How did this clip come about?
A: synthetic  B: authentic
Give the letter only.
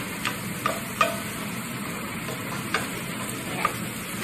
B